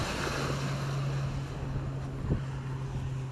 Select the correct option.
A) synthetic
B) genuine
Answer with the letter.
B